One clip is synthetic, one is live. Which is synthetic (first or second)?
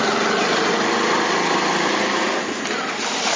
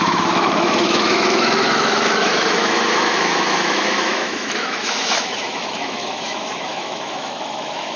second